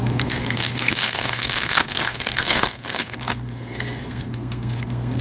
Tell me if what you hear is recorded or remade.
remade